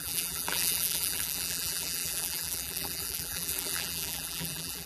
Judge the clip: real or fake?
fake